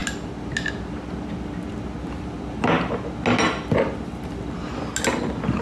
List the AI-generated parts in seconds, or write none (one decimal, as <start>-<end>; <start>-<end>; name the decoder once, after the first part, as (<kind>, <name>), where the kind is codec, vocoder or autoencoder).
none